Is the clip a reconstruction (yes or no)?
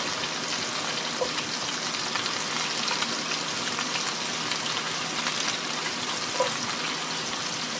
no